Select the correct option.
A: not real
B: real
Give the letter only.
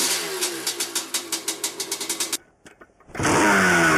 B